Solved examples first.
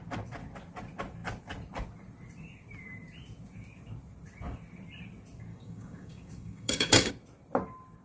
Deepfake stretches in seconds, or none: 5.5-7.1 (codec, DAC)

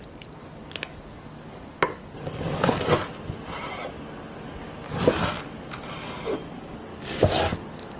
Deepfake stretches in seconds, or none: 0.6-2.7 (codec, DAC); 6.9-8.0